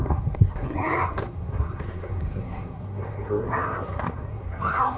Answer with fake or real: fake